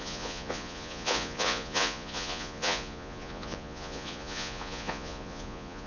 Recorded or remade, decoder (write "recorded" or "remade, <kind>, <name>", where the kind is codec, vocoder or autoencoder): remade, vocoder, Vocos